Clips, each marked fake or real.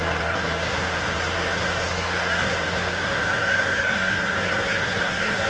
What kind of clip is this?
fake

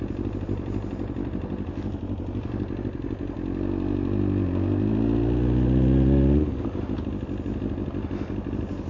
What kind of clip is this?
real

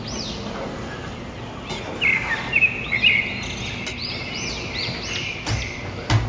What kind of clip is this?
real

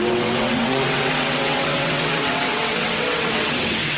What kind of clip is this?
fake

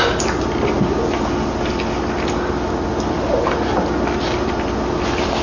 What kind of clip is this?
real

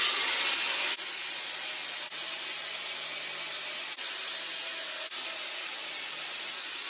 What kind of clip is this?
real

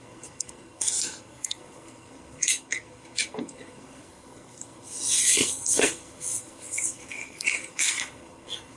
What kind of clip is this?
fake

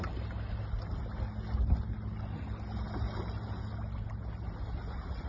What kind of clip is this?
real